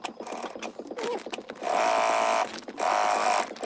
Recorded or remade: recorded